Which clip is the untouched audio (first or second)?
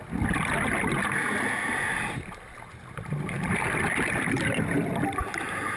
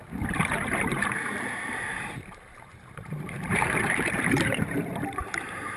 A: first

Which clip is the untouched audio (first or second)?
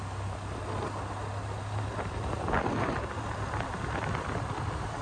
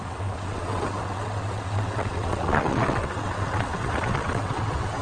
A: first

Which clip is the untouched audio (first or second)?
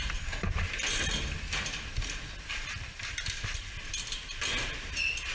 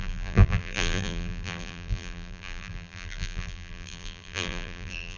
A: first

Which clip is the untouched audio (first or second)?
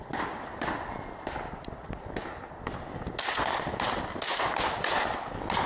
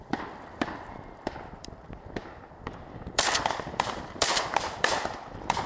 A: first